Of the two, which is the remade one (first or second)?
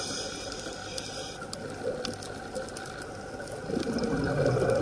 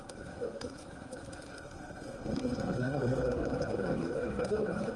second